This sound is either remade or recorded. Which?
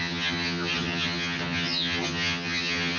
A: remade